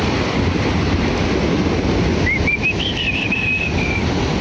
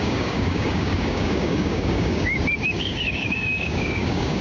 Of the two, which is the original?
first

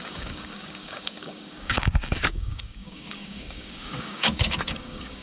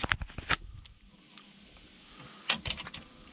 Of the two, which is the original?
second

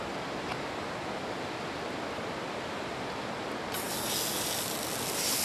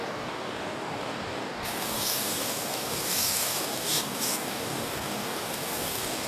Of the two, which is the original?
first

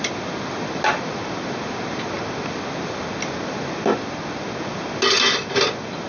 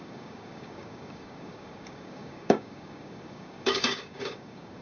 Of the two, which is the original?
first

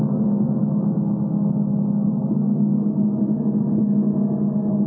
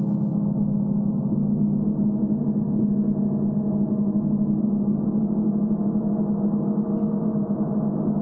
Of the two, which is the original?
second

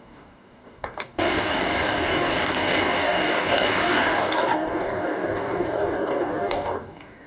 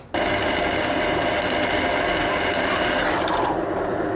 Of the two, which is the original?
second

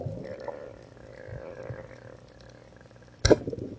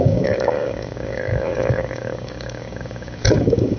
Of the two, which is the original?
first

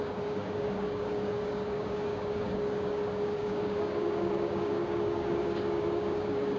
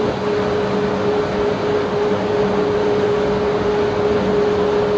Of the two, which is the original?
second